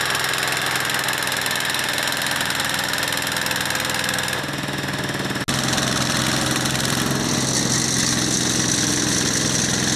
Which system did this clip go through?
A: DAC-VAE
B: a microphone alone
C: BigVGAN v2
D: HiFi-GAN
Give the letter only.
B